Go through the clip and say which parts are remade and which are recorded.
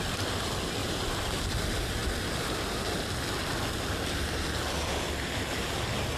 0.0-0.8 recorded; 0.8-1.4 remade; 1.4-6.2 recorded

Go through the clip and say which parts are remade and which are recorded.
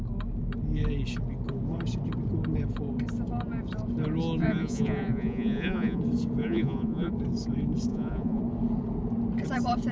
0.0-4.4 recorded; 4.4-6.0 remade; 6.0-6.4 recorded; 6.4-7.1 remade; 7.1-7.9 recorded; 7.9-8.4 remade; 8.4-9.9 recorded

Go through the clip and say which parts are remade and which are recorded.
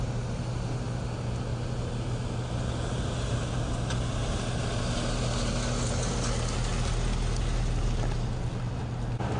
0.0-9.4 recorded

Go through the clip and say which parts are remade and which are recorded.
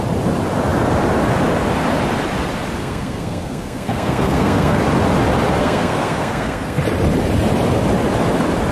0.0-2.8 recorded; 2.8-4.8 remade; 4.8-5.6 recorded; 5.6-6.8 remade; 6.8-8.7 recorded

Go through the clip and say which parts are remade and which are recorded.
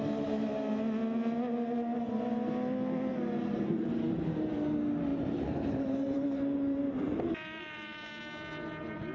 0.0-3.1 recorded; 3.1-4.6 remade; 4.6-5.1 recorded; 5.1-8.1 remade; 8.1-9.1 recorded